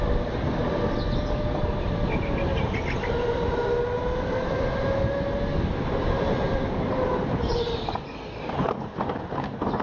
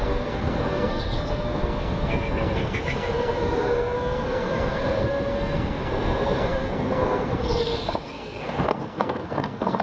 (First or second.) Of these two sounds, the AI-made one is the second